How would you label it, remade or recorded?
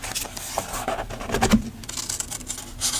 recorded